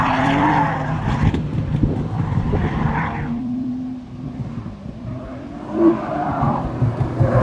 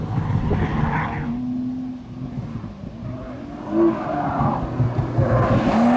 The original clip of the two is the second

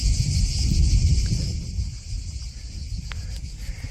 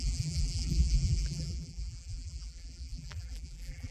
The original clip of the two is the first